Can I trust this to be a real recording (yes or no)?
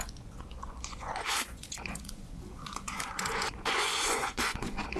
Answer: no